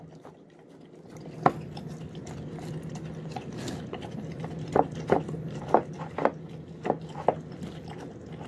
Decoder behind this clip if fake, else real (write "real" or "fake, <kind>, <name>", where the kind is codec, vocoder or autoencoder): real